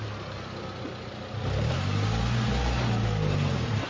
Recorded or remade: recorded